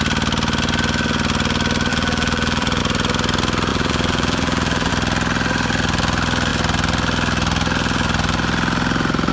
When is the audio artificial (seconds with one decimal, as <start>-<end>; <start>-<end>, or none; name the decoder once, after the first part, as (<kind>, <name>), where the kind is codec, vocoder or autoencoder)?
1.9-2.8 (vocoder, BigVGAN v2); 3.7-4.9